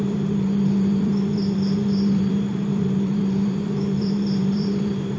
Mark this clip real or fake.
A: fake